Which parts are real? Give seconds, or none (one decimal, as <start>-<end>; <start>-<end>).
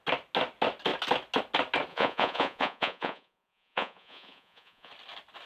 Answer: 0.0-1.9; 4.9-5.5